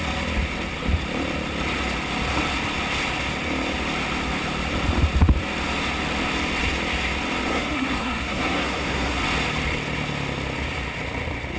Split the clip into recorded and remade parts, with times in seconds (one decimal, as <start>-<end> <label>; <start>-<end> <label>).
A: 0.0-7.5 recorded; 7.5-9.2 remade; 9.2-11.6 recorded